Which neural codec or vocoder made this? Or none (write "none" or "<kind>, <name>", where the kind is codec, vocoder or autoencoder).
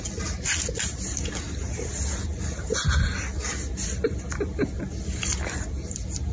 none